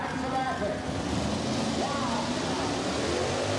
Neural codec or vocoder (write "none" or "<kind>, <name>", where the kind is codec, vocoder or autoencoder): none